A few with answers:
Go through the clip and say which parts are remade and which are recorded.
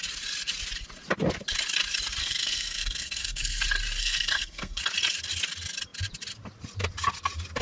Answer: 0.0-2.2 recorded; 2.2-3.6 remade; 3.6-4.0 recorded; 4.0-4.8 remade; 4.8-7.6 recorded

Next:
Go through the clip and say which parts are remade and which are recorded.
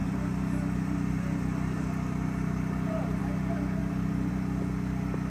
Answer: 0.0-3.2 remade; 3.2-3.8 recorded; 3.8-4.3 remade; 4.3-5.3 recorded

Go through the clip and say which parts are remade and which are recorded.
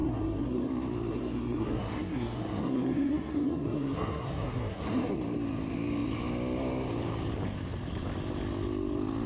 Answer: 0.0-0.7 remade; 0.7-1.1 recorded; 1.1-5.1 remade; 5.1-9.3 recorded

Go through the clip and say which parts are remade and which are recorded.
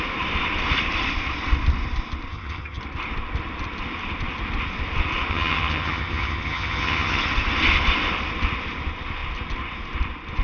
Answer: 0.0-2.3 recorded; 2.3-2.8 remade; 2.8-5.3 recorded; 5.3-7.2 remade; 7.2-10.4 recorded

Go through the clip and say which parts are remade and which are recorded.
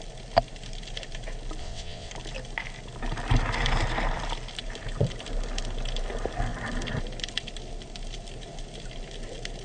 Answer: 0.0-1.6 recorded; 1.6-2.1 remade; 2.1-9.6 recorded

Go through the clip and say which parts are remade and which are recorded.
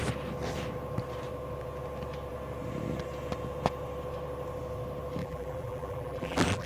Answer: 0.0-5.2 recorded; 5.2-6.7 remade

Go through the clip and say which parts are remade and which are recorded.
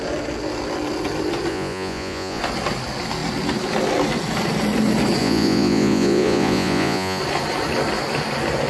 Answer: 0.0-1.5 recorded; 1.5-2.4 remade; 2.4-5.2 recorded; 5.2-7.2 remade; 7.2-8.7 recorded